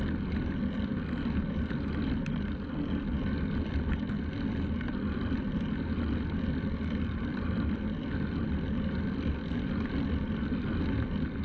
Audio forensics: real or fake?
real